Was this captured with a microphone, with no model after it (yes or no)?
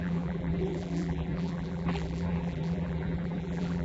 no